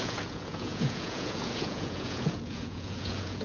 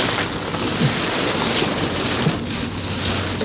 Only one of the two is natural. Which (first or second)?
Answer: second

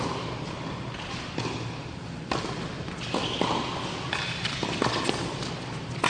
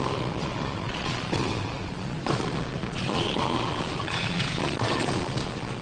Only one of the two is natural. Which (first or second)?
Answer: first